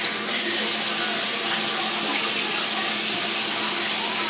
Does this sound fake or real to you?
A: real